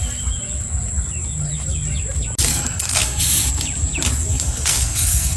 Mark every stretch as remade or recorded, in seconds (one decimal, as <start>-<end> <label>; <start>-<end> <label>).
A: 0.0-2.5 recorded; 2.5-3.2 remade; 3.2-4.3 recorded; 4.3-5.4 remade